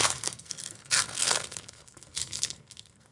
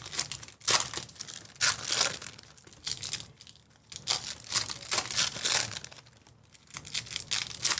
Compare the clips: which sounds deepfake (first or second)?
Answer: first